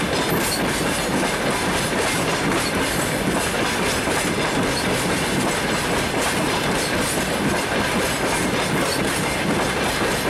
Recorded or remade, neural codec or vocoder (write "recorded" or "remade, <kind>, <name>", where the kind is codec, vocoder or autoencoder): recorded